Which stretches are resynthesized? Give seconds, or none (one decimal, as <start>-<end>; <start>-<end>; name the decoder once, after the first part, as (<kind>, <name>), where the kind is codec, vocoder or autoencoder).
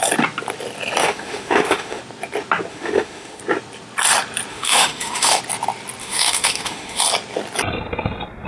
1.0-2.0 (autoencoder, DAC-VAE); 2.7-3.4; 4.5-5.4; 6.0-7.0